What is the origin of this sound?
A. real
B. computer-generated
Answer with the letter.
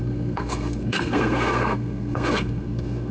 B